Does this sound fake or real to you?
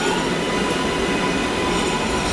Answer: real